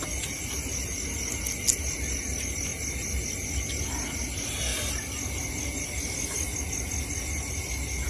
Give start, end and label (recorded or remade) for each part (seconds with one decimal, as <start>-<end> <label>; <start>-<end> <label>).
0.0-8.1 recorded